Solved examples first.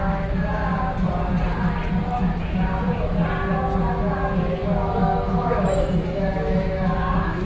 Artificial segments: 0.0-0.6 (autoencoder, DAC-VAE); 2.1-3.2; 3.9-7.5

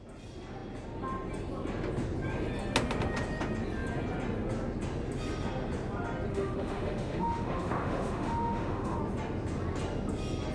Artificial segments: 6.3-9.0 (autoencoder, DAC-VAE)

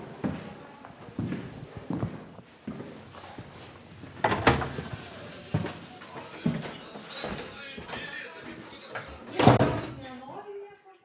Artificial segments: none

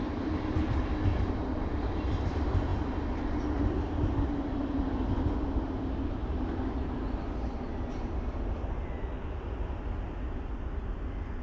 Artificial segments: none